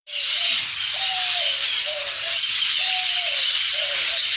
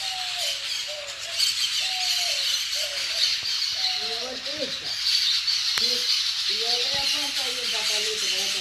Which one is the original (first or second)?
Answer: second